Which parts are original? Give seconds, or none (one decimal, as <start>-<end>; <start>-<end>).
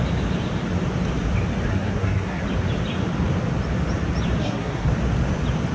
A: 0.0-1.7; 2.4-4.4; 4.9-5.7